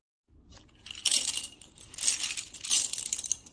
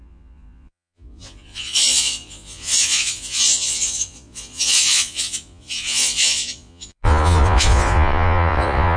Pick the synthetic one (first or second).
second